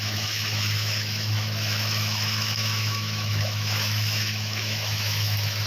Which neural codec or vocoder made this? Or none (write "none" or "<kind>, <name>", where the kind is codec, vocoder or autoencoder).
autoencoder, DAC-VAE